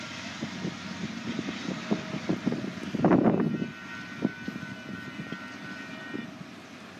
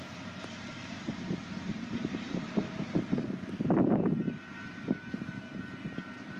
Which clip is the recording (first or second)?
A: first